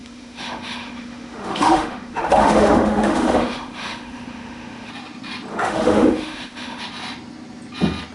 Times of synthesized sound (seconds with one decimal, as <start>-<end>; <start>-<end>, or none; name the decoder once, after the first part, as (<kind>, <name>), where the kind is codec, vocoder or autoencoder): 0.0-4.9 (autoencoder, DAC-VAE); 5.5-6.8